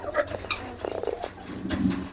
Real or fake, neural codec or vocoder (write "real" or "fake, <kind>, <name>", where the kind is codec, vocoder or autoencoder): fake, vocoder, BigVGAN v2